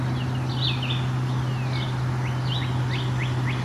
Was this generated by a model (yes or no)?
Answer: no